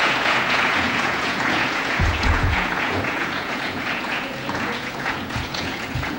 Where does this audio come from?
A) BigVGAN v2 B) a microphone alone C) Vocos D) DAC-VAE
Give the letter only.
C